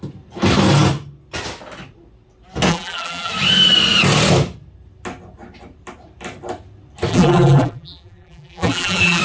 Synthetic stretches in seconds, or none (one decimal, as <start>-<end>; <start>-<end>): 2.7-3.3; 7.1-9.2